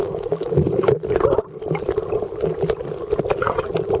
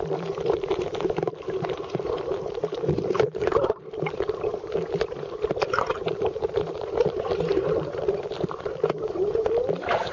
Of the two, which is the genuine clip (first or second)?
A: first